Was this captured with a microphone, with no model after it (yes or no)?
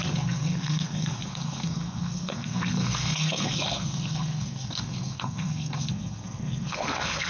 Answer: no